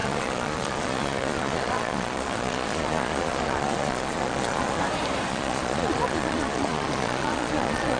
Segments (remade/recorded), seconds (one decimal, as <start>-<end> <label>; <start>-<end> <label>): 0.0-4.8 remade; 4.8-5.3 recorded; 5.3-8.0 remade